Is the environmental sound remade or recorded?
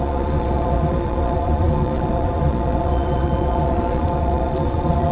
remade